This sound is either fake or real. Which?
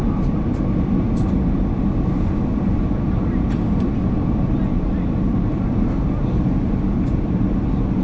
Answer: real